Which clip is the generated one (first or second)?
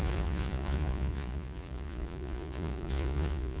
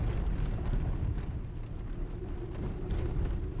first